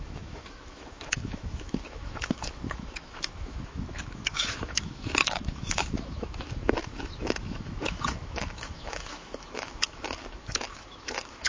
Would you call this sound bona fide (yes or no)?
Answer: no